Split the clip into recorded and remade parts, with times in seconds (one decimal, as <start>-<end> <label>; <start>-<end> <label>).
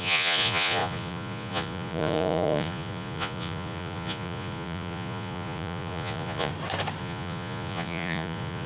0.0-6.5 remade; 6.5-7.0 recorded; 7.0-8.7 remade